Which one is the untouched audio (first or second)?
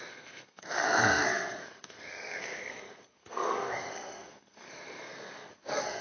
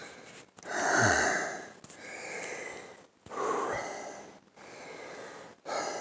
second